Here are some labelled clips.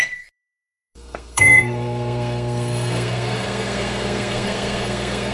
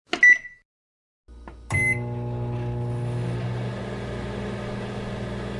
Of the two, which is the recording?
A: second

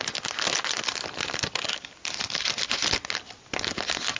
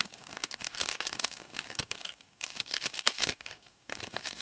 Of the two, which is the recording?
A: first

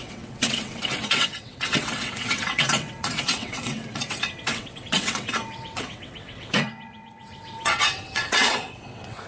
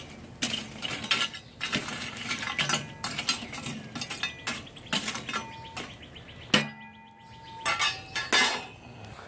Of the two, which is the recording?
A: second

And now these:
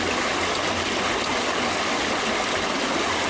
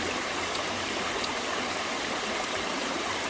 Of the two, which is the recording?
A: first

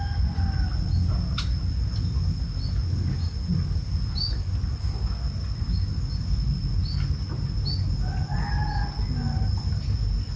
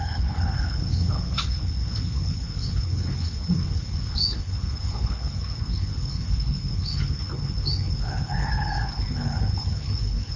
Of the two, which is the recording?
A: first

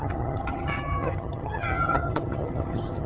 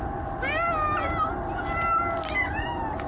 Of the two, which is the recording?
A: second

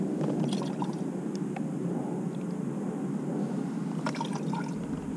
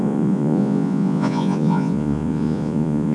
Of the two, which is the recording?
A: first